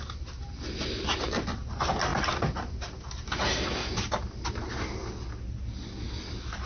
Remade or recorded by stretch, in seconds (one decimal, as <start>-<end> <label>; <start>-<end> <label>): 0.0-6.7 recorded